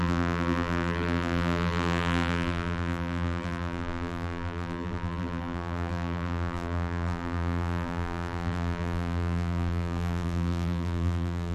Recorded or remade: remade